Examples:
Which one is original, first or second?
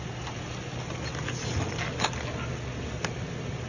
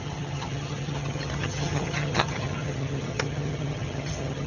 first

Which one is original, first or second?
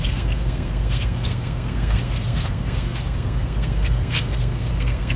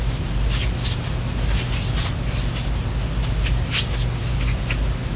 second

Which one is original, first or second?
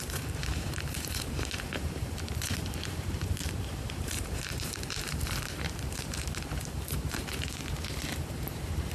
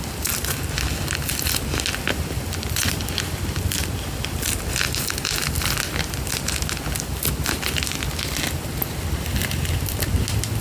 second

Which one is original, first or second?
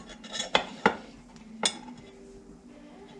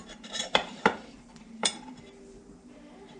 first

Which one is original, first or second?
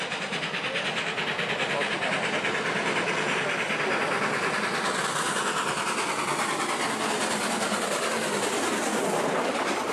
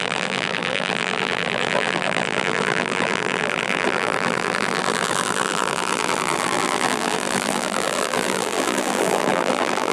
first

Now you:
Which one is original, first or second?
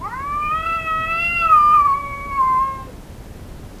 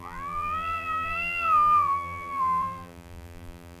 first